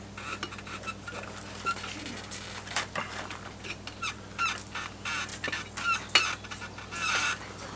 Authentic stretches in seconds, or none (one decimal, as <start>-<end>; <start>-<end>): 0.0-7.8